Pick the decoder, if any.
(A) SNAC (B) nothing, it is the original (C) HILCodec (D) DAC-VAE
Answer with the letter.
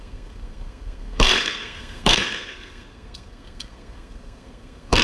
A